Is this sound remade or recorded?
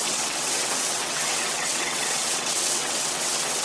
remade